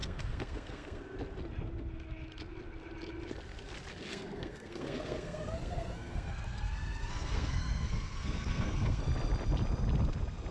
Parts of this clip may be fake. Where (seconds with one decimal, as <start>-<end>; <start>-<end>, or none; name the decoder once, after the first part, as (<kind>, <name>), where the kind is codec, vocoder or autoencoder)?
0.0-1.0 (codec, SNAC); 4.1-9.0